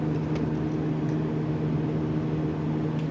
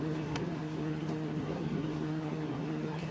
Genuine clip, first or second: first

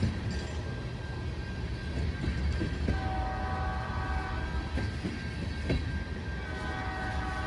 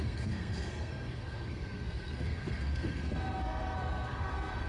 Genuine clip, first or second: first